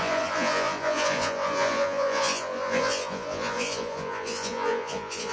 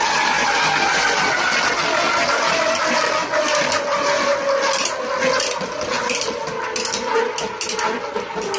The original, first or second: second